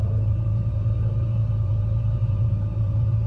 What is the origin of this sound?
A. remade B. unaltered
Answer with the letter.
A